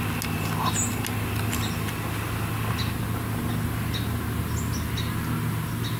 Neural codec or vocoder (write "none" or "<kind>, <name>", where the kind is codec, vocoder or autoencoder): none